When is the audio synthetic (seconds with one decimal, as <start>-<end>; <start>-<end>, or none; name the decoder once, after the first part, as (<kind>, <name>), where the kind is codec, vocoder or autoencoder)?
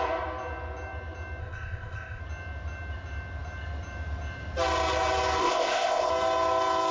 1.4-2.2 (codec, ZipCodec); 5.4-6.1